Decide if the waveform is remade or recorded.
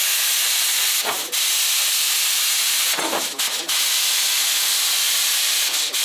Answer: recorded